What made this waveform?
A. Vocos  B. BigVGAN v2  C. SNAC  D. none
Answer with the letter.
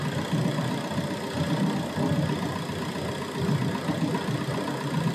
D